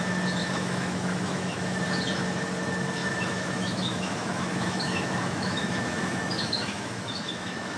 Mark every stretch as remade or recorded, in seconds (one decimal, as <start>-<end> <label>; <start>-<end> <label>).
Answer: 0.0-0.4 recorded; 0.4-1.8 remade; 1.8-3.0 recorded; 3.0-7.8 remade

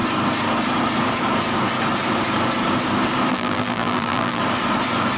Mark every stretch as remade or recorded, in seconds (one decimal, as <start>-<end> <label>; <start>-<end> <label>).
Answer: 0.0-3.3 recorded; 3.3-4.4 remade; 4.4-5.2 recorded

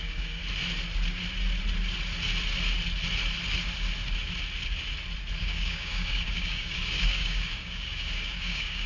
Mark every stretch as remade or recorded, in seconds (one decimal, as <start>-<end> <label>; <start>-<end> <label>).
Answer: 0.0-0.4 remade; 0.4-5.4 recorded; 5.4-8.9 remade

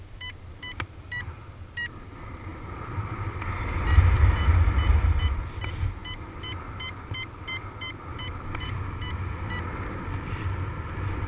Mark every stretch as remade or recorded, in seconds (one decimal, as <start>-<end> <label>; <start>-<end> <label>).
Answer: 0.0-11.3 recorded

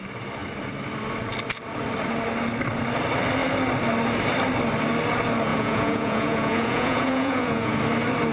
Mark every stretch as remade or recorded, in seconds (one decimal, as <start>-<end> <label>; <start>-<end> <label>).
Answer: 0.0-5.5 recorded; 5.5-7.8 remade; 7.8-8.3 recorded

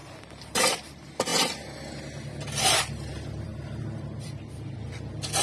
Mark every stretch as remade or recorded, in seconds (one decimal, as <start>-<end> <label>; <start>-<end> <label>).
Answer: 0.0-1.3 remade; 1.3-2.6 recorded; 2.6-5.4 remade

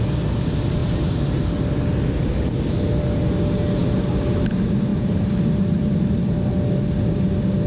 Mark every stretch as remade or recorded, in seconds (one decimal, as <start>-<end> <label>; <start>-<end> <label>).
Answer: 0.0-4.9 recorded; 4.9-6.2 remade; 6.2-7.7 recorded